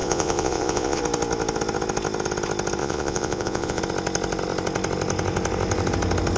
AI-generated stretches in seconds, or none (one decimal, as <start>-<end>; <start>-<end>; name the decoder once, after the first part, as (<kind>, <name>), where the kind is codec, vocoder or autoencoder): 0.0-1.0 (vocoder, Vocos); 2.8-3.8